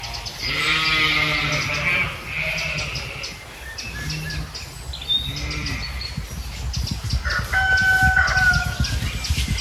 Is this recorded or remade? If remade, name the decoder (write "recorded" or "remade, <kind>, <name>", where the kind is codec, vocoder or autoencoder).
recorded